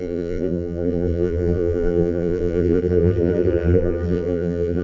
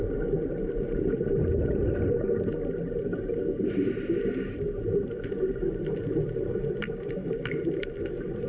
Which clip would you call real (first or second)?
second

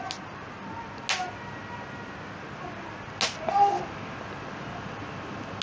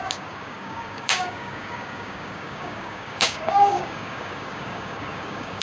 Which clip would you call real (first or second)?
first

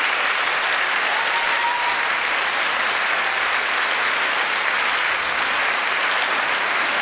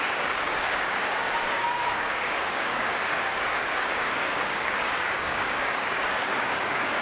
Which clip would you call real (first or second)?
first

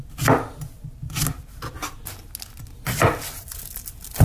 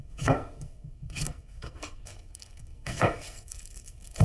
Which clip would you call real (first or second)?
first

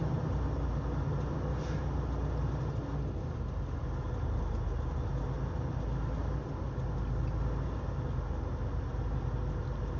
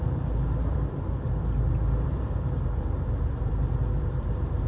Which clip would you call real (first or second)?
first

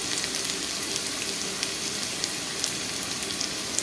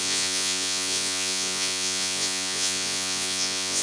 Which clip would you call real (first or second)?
first